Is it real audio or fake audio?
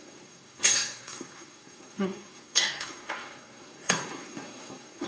fake